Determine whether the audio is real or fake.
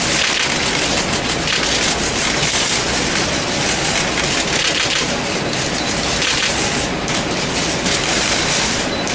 real